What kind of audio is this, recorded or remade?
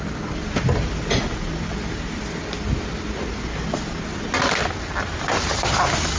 recorded